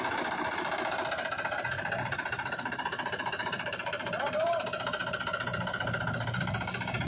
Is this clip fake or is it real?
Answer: fake